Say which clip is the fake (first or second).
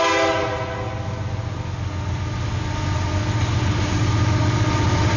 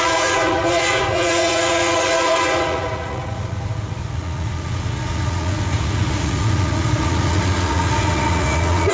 second